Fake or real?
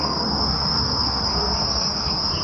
fake